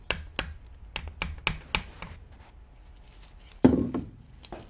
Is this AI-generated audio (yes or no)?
no